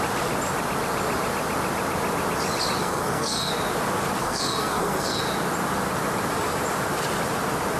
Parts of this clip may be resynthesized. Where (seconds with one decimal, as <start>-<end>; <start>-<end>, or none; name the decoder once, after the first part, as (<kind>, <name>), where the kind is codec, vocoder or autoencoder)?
2.8-3.5 (codec, SNAC); 4.2-5.2